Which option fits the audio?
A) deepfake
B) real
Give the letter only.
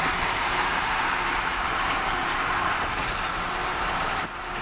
A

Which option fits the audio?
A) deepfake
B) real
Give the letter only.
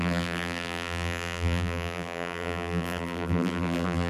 A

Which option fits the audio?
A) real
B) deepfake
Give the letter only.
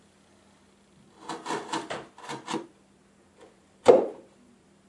B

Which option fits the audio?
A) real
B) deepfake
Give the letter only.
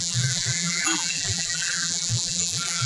B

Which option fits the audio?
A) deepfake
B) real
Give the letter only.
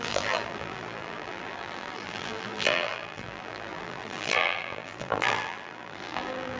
A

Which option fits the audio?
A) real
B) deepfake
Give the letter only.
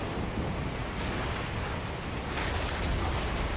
A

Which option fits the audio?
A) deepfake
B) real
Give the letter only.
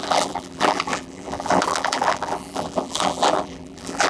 A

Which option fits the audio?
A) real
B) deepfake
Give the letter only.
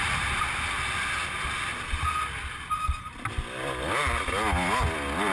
A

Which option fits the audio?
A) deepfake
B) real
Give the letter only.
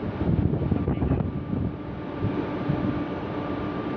A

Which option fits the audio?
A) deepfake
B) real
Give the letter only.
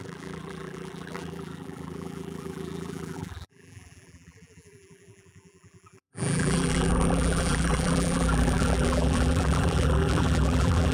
A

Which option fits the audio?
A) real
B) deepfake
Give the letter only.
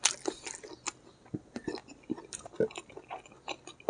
A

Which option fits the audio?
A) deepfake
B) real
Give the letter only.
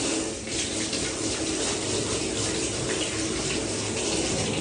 B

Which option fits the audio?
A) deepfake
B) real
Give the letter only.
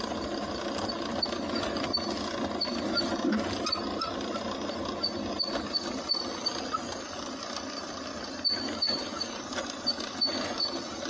B